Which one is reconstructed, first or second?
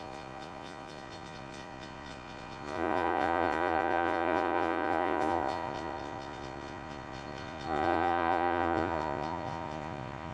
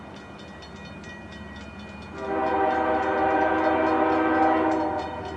first